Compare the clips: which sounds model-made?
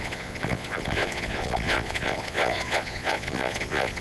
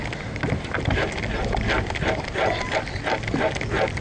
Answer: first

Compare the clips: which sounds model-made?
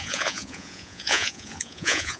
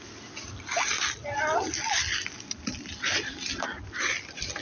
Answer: first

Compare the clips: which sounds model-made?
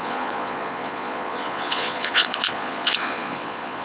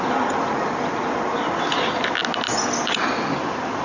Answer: first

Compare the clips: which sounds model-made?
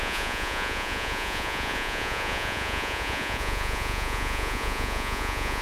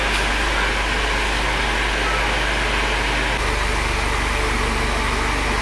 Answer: first